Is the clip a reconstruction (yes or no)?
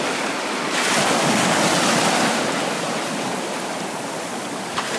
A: no